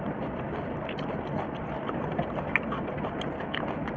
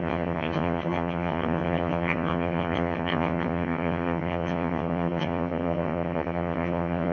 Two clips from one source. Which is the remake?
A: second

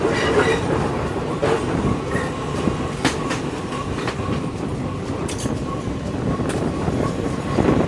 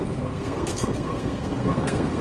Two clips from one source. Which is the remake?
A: second